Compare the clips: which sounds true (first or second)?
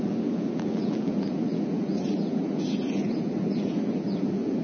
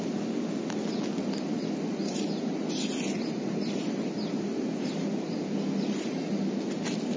second